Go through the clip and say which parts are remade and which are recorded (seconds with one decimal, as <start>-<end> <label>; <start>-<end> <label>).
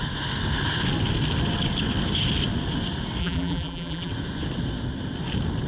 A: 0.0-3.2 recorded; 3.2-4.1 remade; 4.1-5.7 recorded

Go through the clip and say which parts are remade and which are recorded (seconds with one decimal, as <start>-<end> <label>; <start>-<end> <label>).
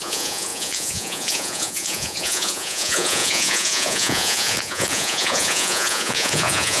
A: 0.0-6.8 remade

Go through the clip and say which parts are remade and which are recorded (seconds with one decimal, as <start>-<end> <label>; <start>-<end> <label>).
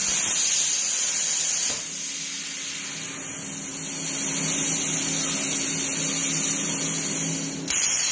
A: 0.0-8.1 recorded